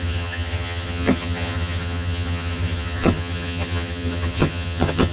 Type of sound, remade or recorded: remade